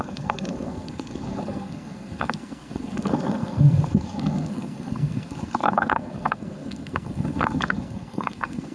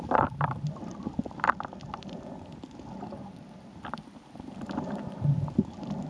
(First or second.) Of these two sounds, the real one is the second